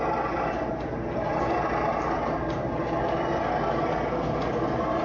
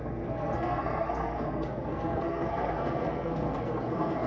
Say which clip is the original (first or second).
first